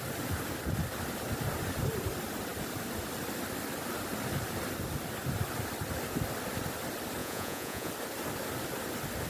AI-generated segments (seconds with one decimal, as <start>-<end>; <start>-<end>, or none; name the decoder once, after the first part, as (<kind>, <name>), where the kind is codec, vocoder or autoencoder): 7.2-7.9 (vocoder, Vocos)

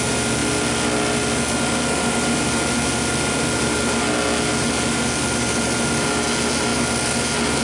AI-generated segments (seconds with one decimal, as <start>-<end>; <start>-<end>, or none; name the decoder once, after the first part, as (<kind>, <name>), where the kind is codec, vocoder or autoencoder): none

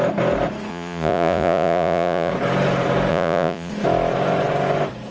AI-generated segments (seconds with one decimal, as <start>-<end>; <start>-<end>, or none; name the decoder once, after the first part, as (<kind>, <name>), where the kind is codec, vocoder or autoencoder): 0.7-2.3 (vocoder, Vocos); 3.1-3.7

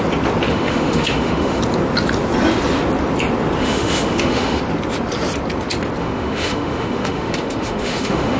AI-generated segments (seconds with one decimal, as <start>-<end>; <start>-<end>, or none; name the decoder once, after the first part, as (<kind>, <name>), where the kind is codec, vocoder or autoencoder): 0.5-1.6 (autoencoder, DAC-VAE); 3.6-4.6; 6.0-8.4

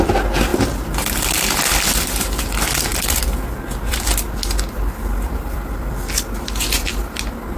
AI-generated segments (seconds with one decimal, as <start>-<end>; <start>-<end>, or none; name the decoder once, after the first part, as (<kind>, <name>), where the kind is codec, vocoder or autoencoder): 2.9-7.6 (vocoder, BigVGAN v2)

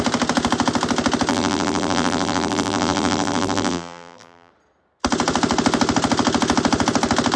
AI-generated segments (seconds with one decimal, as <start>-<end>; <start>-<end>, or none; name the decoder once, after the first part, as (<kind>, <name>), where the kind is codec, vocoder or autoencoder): 1.3-4.5 (vocoder, BigVGAN v2)

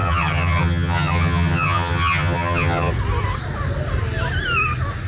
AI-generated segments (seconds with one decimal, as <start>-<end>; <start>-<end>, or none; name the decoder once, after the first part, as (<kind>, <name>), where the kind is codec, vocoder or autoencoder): 0.0-2.9 (vocoder, HiFi-GAN)

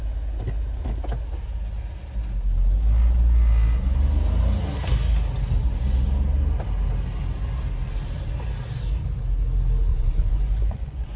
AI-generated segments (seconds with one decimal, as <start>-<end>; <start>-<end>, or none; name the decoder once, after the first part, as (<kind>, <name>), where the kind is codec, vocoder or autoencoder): 9.9-11.2 (vocoder, Vocos)